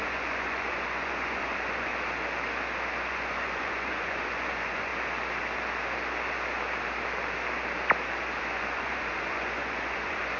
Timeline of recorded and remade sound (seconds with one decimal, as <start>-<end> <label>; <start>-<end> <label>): 0.0-1.9 remade; 1.9-3.1 recorded; 3.1-4.9 remade; 4.9-8.4 recorded; 8.4-10.4 remade